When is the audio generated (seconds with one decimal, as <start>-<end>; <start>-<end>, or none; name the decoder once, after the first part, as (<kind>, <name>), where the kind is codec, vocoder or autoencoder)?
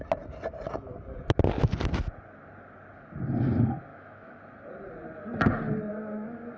3.9-4.4 (autoencoder, DAC-VAE); 5.9-6.6